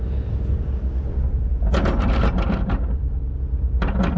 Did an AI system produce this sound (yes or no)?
no